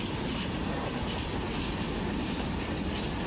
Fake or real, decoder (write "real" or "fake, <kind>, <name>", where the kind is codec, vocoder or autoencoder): real